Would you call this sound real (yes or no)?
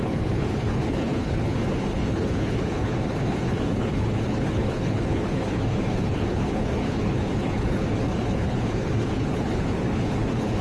no